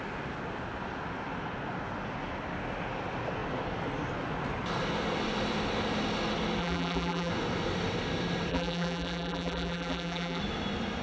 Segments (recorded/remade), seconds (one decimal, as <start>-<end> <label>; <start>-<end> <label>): 0.0-6.6 recorded; 6.6-7.3 remade; 7.3-8.5 recorded; 8.5-10.4 remade; 10.4-11.0 recorded